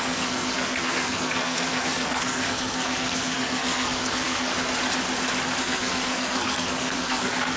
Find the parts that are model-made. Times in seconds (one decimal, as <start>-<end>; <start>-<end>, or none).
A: 0.0-4.5; 5.6-7.6